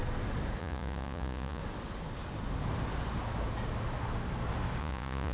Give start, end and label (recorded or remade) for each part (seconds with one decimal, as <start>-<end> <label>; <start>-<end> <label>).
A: 0.0-0.6 recorded; 0.6-1.6 remade; 1.6-4.8 recorded; 4.8-5.3 remade